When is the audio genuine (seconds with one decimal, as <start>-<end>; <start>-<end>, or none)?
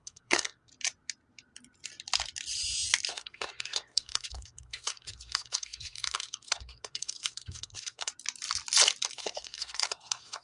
0.7-3.1; 8.1-9.1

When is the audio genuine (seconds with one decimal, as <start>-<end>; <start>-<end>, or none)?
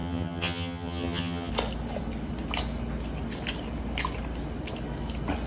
1.5-5.5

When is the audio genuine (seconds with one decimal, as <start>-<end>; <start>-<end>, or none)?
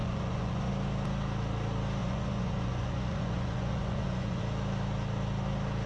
0.7-2.0; 4.4-5.9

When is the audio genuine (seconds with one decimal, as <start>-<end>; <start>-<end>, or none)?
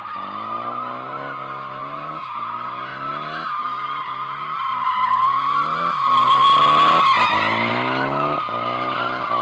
0.0-1.8; 2.4-9.4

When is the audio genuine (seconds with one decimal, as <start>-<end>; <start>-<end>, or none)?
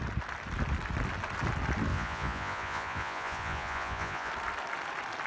0.0-1.9; 4.3-5.3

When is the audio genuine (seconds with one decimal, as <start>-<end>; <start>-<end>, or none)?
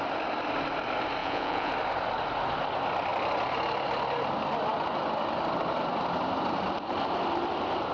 0.0-1.2; 1.7-7.9